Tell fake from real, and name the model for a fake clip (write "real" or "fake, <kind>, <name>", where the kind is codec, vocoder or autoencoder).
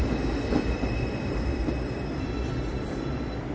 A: real